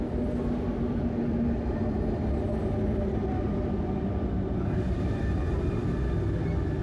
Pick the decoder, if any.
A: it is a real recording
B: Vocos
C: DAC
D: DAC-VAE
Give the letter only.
A